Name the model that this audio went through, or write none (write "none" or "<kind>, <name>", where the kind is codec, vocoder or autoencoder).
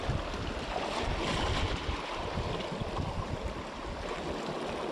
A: none